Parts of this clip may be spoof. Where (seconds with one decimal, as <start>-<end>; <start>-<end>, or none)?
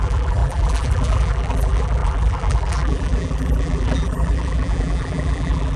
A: 0.0-5.8